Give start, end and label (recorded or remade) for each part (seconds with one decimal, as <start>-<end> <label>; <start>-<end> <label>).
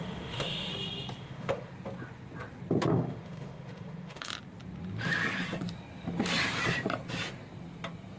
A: 0.0-0.7 remade; 0.7-1.2 recorded; 1.2-1.7 remade; 1.7-2.9 recorded; 2.9-4.3 remade; 4.3-8.2 recorded